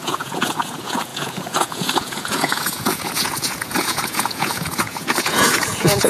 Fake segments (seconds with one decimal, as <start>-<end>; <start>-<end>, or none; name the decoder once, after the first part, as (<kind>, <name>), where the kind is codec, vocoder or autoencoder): 0.0-6.1 (vocoder, Vocos)